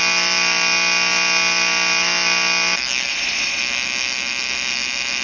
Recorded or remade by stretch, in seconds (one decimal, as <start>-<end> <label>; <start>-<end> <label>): 0.0-3.1 recorded; 3.1-3.6 remade; 3.6-5.2 recorded